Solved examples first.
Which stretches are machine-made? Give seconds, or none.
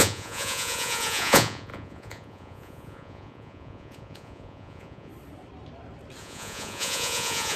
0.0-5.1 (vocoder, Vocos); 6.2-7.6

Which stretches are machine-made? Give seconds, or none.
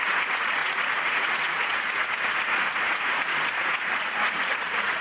0.0-5.0 (vocoder, Vocos)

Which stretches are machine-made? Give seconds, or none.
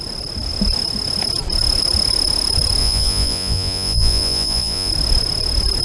2.8-4.9 (vocoder, Vocos)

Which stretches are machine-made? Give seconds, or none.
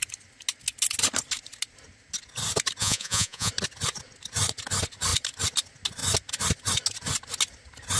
2.8-3.5 (vocoder, Vocos)